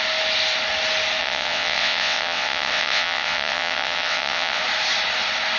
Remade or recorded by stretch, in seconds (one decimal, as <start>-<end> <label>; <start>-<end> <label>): 0.0-1.2 recorded; 1.2-4.6 remade; 4.6-5.6 recorded